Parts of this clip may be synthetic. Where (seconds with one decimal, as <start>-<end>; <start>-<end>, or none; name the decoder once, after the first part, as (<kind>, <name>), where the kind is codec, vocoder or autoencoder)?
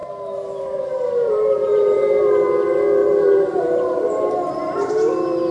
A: 0.0-2.5 (vocoder, BigVGAN v2); 3.0-4.9